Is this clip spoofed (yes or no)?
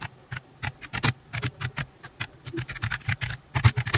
no